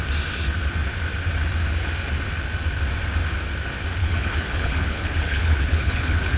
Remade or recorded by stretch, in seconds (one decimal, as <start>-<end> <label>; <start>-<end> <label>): 0.0-4.0 recorded; 4.0-6.4 remade